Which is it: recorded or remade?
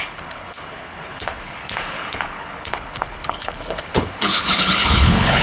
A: remade